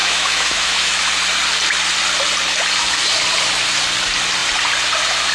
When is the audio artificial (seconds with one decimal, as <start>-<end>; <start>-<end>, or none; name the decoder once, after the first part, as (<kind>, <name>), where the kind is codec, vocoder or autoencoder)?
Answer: 0.0-1.0 (autoencoder, DAC-VAE)